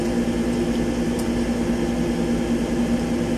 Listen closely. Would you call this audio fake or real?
real